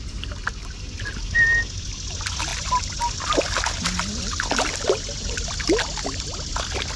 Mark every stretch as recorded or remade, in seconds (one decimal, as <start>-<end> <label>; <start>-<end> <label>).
0.0-7.0 recorded

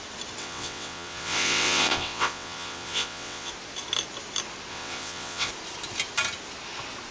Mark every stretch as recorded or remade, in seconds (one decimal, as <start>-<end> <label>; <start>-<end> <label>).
0.0-0.4 recorded; 0.4-3.5 remade; 3.5-4.7 recorded; 4.7-5.5 remade; 5.5-7.1 recorded

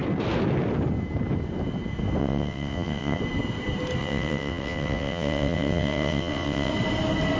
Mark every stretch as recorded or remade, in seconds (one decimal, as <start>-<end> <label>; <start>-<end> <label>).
0.0-2.2 recorded; 2.2-3.2 remade; 3.2-4.0 recorded; 4.0-6.7 remade; 6.7-7.4 recorded

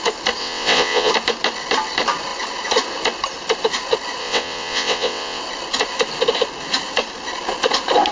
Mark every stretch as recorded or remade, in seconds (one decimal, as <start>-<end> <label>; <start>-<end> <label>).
0.0-0.4 recorded; 0.4-1.1 remade; 1.1-4.2 recorded; 4.2-5.4 remade; 5.4-8.1 recorded

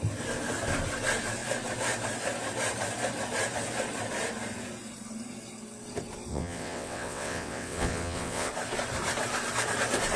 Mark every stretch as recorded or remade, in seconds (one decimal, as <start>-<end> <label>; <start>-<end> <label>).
0.0-6.3 recorded; 6.3-8.5 remade; 8.5-10.2 recorded

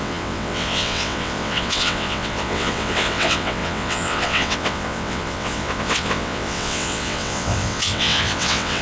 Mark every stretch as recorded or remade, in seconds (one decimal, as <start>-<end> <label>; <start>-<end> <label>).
0.0-8.8 remade

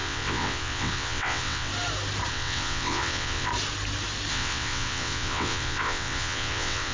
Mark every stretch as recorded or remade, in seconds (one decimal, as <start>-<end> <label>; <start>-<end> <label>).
0.0-1.7 remade; 1.7-2.3 recorded; 2.3-3.5 remade; 3.5-4.3 recorded; 4.3-6.9 remade